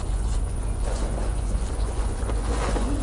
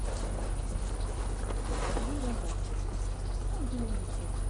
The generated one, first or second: first